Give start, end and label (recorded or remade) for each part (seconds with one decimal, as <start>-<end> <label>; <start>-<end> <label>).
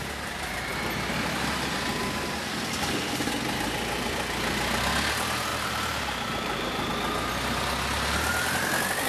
0.0-5.5 recorded; 5.5-6.9 remade; 6.9-9.1 recorded